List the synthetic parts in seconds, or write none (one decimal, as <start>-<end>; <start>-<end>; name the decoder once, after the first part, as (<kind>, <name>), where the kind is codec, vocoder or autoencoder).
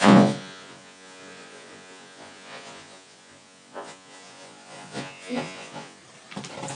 0.0-6.0 (vocoder, Vocos)